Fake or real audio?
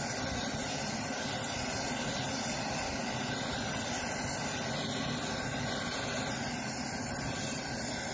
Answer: real